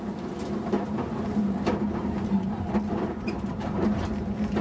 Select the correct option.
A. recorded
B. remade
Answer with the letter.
B